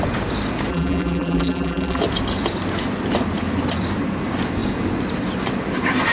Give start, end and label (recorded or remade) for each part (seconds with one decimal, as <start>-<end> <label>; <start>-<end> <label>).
0.0-0.7 recorded; 0.7-2.0 remade; 2.0-6.1 recorded